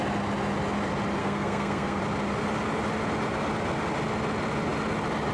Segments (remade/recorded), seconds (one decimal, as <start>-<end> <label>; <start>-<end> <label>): 0.0-1.2 recorded; 1.2-2.0 remade; 2.0-5.3 recorded